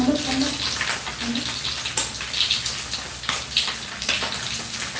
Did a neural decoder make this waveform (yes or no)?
no